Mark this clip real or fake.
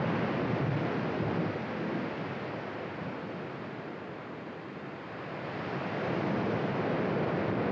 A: real